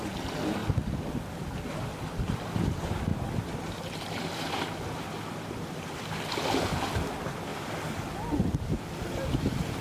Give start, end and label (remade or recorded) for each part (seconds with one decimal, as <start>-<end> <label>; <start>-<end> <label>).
0.0-0.6 recorded; 0.6-2.5 remade; 2.5-3.1 recorded; 3.1-6.3 remade; 6.3-7.5 recorded; 7.5-9.4 remade; 9.4-9.8 recorded